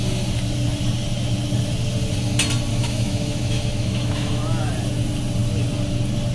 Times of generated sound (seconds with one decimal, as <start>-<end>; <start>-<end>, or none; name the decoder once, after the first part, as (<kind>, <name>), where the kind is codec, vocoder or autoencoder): 2.7-4.7 (autoencoder, DAC-VAE)